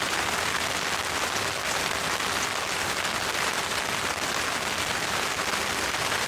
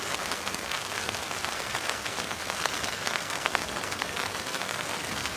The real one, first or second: first